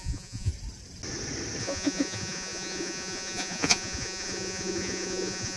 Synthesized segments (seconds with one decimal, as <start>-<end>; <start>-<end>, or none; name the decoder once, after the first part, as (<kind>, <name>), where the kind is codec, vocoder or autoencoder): 0.0-0.5 (vocoder, Vocos); 1.6-5.6